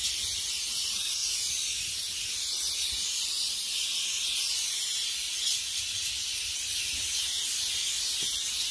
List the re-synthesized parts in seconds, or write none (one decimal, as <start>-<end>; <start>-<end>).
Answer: none